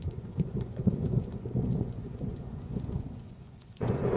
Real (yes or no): no